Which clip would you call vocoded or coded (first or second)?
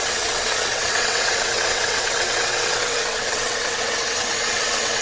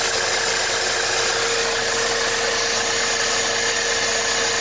first